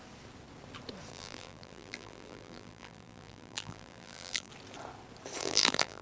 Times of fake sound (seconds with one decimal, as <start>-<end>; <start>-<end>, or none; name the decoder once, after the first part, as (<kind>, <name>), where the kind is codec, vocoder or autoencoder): 1.1-4.5 (vocoder, BigVGAN v2); 5.4-6.0

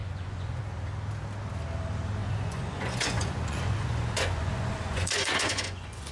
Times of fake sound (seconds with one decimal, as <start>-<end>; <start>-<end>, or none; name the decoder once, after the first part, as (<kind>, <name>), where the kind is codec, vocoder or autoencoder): 0.0-0.6 (vocoder, Vocos); 2.2-6.1

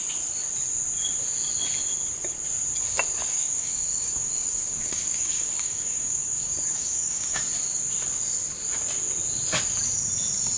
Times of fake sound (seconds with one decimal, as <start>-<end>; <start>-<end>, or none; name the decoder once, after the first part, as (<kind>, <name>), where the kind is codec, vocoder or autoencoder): 3.2-7.4 (codec, DAC)

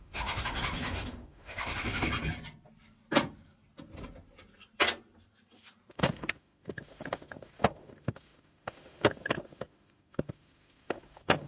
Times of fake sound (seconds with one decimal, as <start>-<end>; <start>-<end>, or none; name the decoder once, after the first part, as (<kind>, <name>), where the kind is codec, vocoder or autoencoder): 0.0-2.1 (autoencoder, DAC-VAE); 5.9-11.5

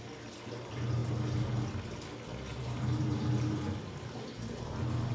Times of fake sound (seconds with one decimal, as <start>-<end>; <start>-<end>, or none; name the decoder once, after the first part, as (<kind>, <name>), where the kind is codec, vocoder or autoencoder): 2.5-3.6 (vocoder, BigVGAN v2)